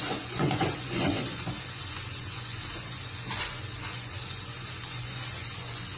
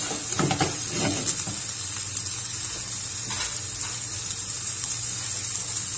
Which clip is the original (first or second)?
second